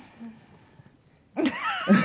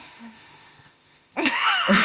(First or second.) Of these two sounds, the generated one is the second